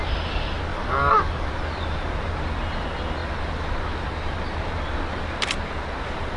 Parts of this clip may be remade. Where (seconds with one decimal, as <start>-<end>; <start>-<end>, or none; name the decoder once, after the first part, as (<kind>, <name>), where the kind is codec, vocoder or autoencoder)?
0.7-1.5 (codec, DAC)